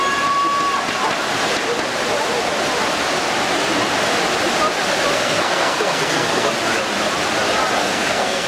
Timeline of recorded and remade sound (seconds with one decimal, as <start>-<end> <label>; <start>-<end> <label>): 0.0-5.1 recorded; 5.1-6.5 remade; 6.5-7.8 recorded; 7.8-8.5 remade